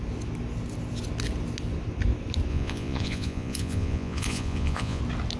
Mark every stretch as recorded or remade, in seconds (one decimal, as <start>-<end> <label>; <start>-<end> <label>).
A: 0.0-2.5 recorded; 2.5-5.0 remade; 5.0-5.4 recorded